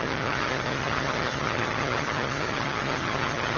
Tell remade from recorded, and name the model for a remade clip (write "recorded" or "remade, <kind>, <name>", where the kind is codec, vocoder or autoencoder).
remade, vocoder, HiFi-GAN